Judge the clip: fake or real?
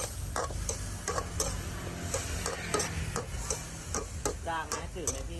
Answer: real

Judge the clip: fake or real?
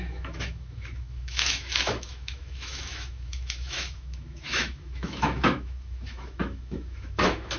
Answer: fake